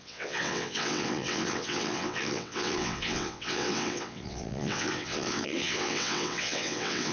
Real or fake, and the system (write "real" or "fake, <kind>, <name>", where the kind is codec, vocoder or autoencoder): fake, vocoder, WaveNeXt